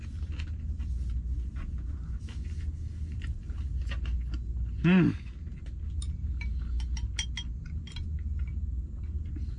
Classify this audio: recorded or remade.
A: recorded